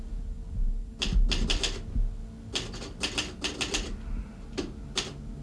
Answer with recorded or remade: recorded